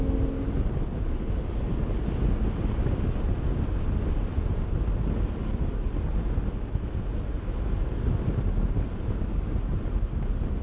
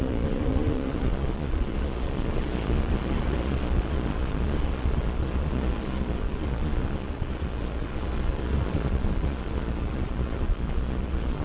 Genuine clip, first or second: first